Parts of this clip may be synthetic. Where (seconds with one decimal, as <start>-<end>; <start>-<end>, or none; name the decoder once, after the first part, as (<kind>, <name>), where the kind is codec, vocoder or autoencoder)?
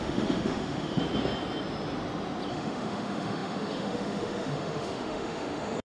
0.0-1.0 (autoencoder, DAC-VAE); 2.5-5.8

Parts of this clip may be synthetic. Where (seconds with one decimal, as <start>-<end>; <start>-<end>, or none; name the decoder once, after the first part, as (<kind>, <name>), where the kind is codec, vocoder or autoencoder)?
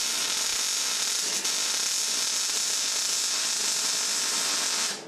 none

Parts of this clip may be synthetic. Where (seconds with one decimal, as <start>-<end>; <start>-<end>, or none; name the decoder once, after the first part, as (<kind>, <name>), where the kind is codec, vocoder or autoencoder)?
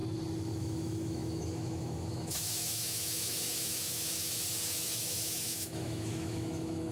0.6-6.9 (autoencoder, DAC-VAE)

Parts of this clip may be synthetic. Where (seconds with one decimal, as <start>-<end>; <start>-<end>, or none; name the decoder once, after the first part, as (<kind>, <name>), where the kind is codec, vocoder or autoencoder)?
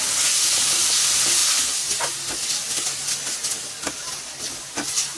none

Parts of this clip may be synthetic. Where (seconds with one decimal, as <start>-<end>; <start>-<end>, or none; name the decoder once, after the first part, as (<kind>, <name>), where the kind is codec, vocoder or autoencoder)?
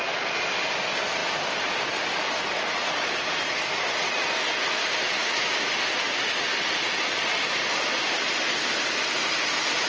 5.2-5.8 (autoencoder, DAC-VAE)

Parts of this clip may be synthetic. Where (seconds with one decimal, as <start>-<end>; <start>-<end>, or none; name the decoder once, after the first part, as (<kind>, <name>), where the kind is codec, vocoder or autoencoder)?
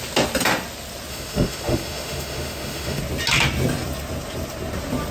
1.1-3.0 (autoencoder, DAC-VAE)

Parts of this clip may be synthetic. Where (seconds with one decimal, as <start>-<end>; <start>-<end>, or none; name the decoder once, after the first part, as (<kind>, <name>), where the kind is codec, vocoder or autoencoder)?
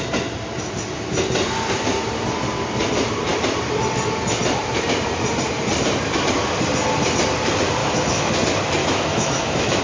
7.8-8.3 (autoencoder, DAC-VAE); 8.8-9.8